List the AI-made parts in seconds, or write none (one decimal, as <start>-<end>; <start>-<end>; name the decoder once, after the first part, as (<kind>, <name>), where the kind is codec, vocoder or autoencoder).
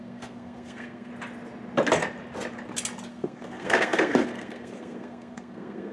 0.0-1.1 (codec, SNAC); 3.1-5.9